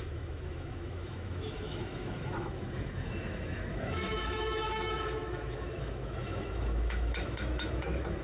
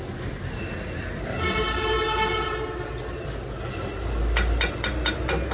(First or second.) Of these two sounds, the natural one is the second